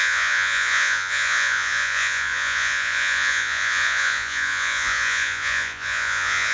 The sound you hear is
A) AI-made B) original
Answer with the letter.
A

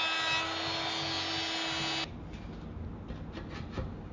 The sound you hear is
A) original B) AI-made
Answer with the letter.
A